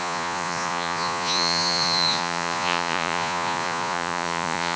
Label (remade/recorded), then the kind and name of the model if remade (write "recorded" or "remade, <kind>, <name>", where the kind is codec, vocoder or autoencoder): remade, vocoder, Vocos